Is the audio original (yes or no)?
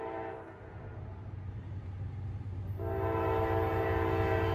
yes